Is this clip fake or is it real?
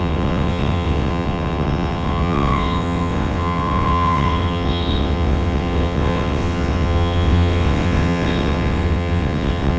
fake